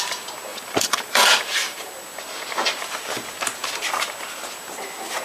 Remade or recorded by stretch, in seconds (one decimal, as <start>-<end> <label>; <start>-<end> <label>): 0.0-0.5 recorded; 0.5-1.9 remade; 1.9-5.2 recorded